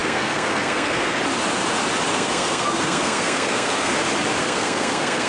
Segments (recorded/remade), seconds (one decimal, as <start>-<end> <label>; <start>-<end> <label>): 0.0-1.2 remade; 1.2-2.1 recorded; 2.1-3.9 remade; 3.9-4.4 recorded; 4.4-5.3 remade